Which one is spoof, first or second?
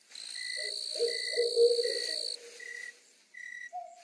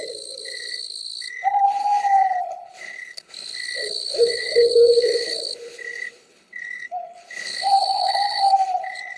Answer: second